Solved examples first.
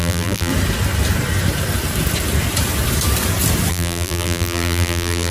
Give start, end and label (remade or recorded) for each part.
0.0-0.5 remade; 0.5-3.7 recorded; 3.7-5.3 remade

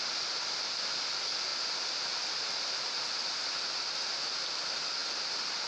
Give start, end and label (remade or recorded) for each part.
0.0-5.7 recorded

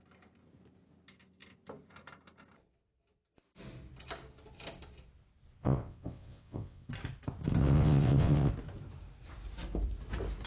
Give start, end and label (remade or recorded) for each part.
0.0-5.6 recorded; 5.6-6.9 remade; 6.9-7.6 recorded; 7.6-8.5 remade; 8.5-10.5 recorded

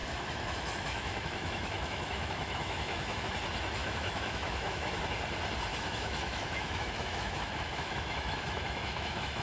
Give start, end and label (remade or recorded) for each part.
0.0-3.2 remade; 3.2-3.8 recorded; 3.8-5.0 remade; 5.0-5.7 recorded; 5.7-9.4 remade

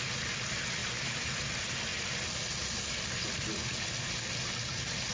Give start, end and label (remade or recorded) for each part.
0.0-0.8 recorded; 0.8-1.4 remade; 1.4-5.1 recorded

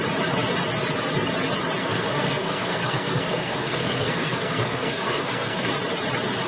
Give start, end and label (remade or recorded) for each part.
0.0-1.8 recorded; 1.8-5.7 remade; 5.7-6.5 recorded

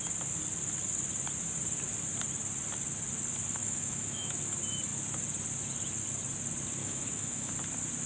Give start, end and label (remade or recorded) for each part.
0.0-3.6 recorded; 3.6-4.4 remade; 4.4-6.8 recorded; 6.8-7.5 remade; 7.5-8.1 recorded

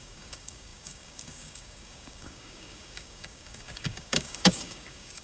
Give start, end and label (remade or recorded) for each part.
0.0-5.2 remade